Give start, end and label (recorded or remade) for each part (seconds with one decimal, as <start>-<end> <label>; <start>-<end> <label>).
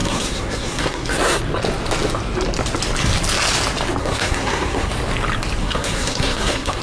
0.0-1.4 remade; 1.4-4.0 recorded; 4.0-4.9 remade; 4.9-5.6 recorded; 5.6-6.8 remade